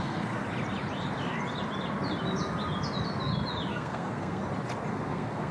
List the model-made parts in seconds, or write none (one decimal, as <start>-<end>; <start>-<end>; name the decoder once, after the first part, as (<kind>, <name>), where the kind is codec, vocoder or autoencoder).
0.0-0.4 (codec, SNAC); 3.7-4.4; 4.9-5.5